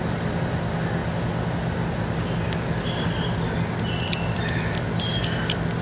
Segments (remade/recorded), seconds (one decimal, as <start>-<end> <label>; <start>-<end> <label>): 0.0-5.8 recorded